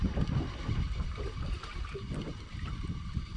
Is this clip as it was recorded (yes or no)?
yes